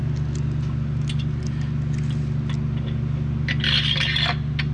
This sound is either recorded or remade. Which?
recorded